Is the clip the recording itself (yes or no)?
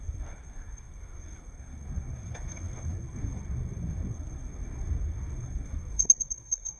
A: no